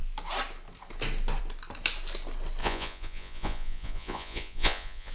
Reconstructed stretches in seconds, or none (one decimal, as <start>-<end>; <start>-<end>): 2.6-5.1